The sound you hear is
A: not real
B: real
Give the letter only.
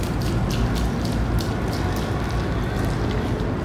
B